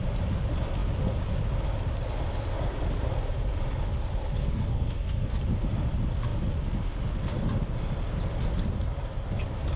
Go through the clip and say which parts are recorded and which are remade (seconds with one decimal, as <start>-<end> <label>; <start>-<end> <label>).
0.0-4.4 recorded; 4.4-5.4 remade; 5.4-9.8 recorded